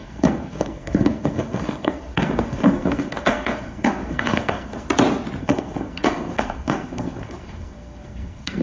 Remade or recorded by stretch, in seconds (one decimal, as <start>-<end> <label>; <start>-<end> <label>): 0.0-4.9 remade; 4.9-5.4 recorded; 5.4-8.6 remade